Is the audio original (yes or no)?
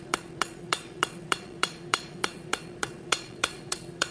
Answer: no